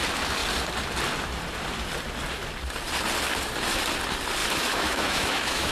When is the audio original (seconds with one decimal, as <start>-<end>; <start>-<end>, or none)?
0.0-4.4